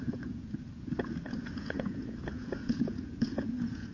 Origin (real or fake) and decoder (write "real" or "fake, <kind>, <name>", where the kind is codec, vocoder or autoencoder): fake, vocoder, Vocos